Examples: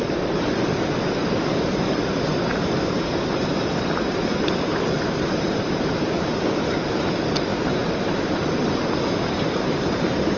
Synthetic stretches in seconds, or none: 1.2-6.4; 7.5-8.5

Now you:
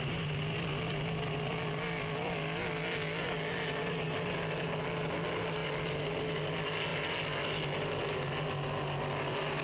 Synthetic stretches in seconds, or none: none

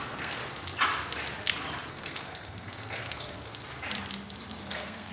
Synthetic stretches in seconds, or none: 0.0-0.4; 1.9-3.5; 4.6-5.1

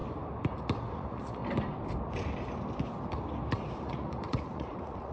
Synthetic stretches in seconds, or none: 0.9-1.4; 3.8-5.1

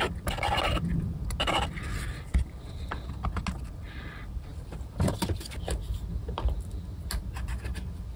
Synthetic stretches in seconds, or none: none

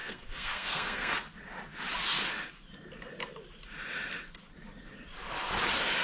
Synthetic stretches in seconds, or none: 0.0-1.1

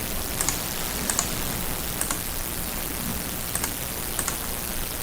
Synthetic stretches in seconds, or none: none

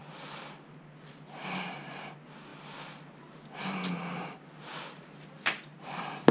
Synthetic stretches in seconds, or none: none